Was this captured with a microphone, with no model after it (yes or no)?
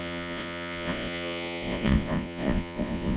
no